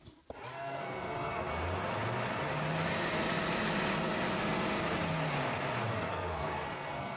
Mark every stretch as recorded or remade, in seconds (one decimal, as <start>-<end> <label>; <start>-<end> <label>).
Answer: 0.0-0.5 recorded; 0.5-1.5 remade; 1.5-5.9 recorded; 5.9-7.2 remade